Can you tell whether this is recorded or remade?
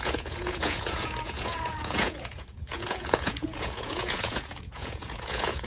remade